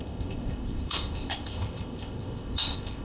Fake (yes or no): yes